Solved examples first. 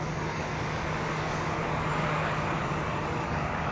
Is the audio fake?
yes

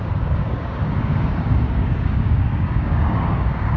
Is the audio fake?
yes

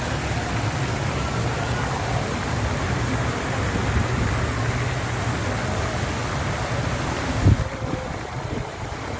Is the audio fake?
no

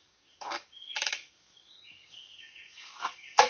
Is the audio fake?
yes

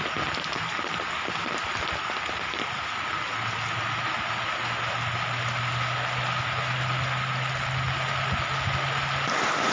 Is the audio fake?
no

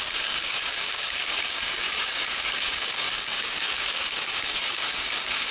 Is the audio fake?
yes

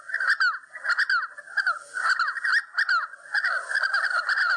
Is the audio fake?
no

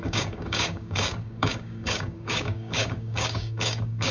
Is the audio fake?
yes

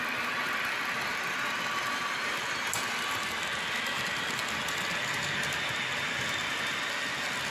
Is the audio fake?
no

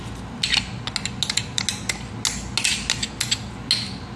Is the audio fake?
no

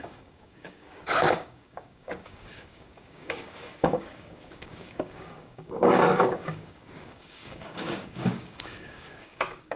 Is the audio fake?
yes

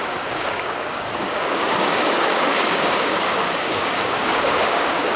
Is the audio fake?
yes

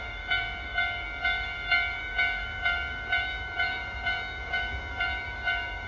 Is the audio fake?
yes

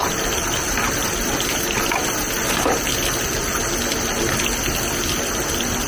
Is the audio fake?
no